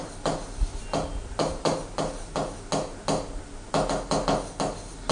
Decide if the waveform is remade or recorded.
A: recorded